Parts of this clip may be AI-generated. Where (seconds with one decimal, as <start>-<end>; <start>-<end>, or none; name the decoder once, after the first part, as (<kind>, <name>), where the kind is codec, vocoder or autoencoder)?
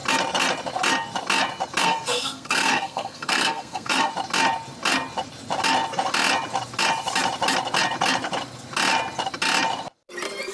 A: 1.8-4.1 (codec, SNAC)